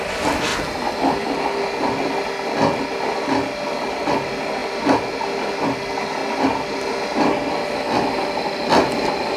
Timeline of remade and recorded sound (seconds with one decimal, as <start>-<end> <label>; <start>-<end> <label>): 0.0-9.4 recorded